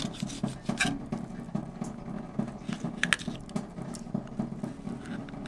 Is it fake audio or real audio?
real